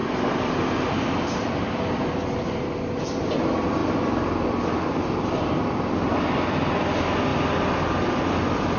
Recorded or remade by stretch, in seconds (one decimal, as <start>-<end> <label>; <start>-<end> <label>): 0.0-0.6 remade; 0.6-7.3 recorded; 7.3-8.8 remade